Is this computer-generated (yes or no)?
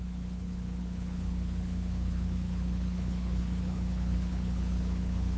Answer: yes